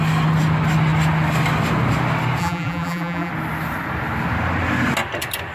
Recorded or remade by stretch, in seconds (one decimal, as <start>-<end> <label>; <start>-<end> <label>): 0.0-2.4 recorded; 2.4-3.3 remade; 3.3-5.5 recorded